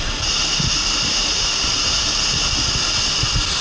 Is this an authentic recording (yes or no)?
yes